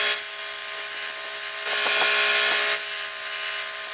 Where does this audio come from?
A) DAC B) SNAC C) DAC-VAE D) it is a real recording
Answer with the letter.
D